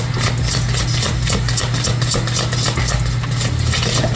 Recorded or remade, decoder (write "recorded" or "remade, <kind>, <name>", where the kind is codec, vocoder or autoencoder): recorded